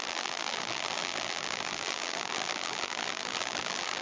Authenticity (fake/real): fake